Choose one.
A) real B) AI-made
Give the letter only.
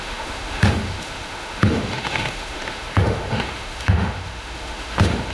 B